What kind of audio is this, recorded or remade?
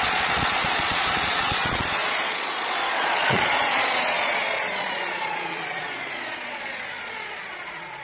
remade